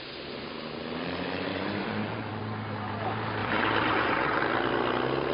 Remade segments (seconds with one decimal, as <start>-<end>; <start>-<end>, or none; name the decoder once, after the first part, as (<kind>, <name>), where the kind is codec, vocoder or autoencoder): 1.5-2.4 (vocoder, Vocos); 3.4-4.4